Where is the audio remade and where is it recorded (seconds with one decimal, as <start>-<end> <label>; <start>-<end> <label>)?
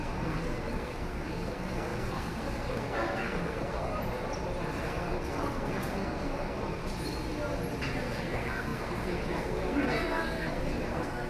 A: 0.0-3.9 remade; 3.9-4.8 recorded; 4.8-6.8 remade; 6.8-8.0 recorded; 8.0-11.3 remade